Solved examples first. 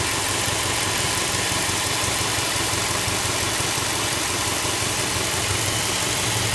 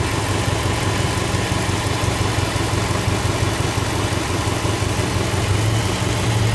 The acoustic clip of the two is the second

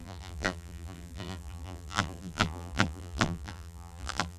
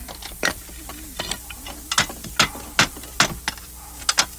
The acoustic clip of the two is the second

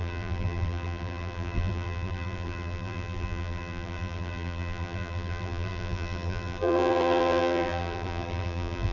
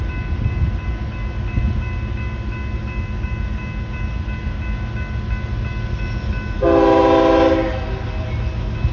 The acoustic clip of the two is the second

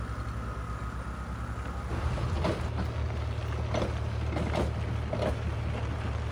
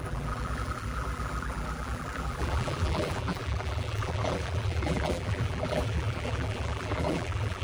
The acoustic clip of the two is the first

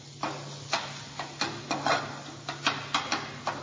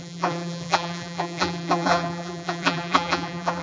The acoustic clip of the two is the first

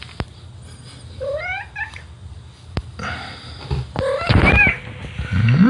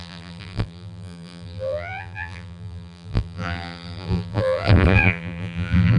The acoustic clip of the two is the first